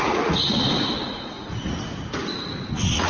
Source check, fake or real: fake